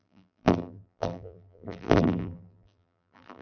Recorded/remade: remade